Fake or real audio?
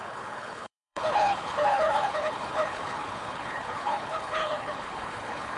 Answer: fake